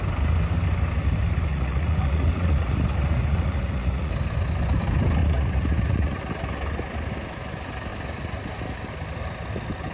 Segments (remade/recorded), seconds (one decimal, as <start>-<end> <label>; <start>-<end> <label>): 0.0-1.5 recorded; 1.5-4.1 remade; 4.1-5.2 recorded; 5.2-6.2 remade; 6.2-9.9 recorded